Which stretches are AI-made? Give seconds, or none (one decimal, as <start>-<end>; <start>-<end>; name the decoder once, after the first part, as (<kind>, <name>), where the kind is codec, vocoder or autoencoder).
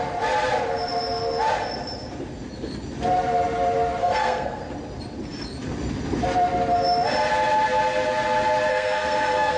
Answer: 4.0-4.6 (codec, SNAC); 8.7-9.6